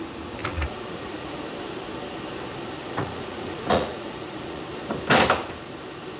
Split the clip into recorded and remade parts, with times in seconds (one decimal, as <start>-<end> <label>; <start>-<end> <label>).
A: 0.0-0.4 recorded; 0.4-1.4 remade; 1.4-2.8 recorded; 2.8-4.6 remade; 4.6-6.2 recorded